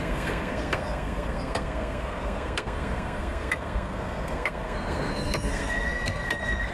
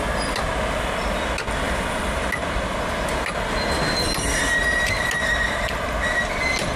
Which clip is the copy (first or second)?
first